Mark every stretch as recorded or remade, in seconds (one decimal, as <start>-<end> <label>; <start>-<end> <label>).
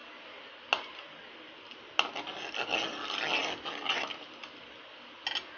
0.0-5.6 recorded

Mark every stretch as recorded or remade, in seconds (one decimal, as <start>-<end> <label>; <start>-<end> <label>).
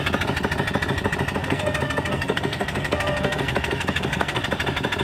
0.0-1.4 recorded; 1.4-4.4 remade; 4.4-5.0 recorded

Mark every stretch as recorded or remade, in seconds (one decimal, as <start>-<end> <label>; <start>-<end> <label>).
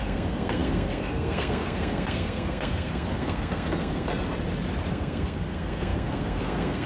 0.0-4.1 remade; 4.1-4.9 recorded; 4.9-6.9 remade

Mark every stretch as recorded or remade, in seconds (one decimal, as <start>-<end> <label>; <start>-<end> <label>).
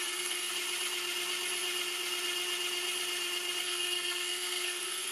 0.0-0.5 remade; 0.5-3.6 recorded; 3.6-5.1 remade